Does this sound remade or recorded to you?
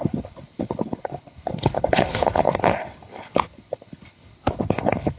remade